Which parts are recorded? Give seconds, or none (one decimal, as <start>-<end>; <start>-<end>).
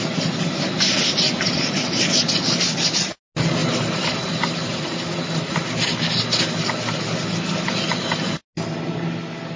0.0-9.6